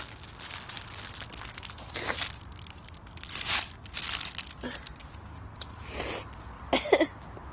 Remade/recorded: recorded